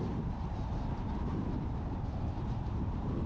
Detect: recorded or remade remade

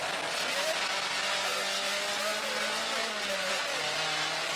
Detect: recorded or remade recorded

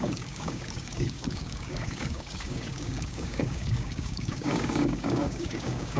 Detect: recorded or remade remade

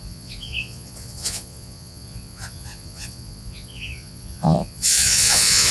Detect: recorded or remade remade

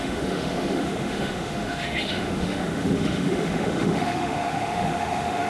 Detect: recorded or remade remade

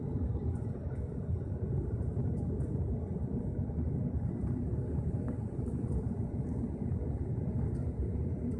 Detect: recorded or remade recorded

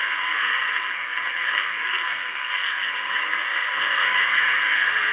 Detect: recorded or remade remade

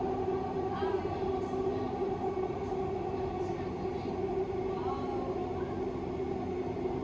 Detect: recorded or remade recorded